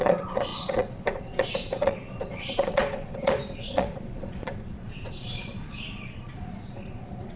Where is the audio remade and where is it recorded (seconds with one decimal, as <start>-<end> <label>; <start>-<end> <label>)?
0.0-7.4 remade